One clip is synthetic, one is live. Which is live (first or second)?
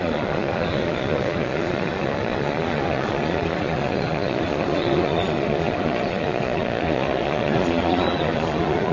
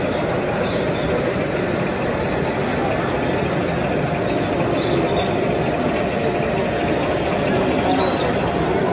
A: second